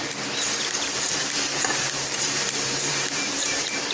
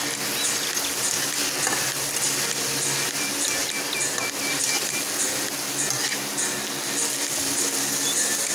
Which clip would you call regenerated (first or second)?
first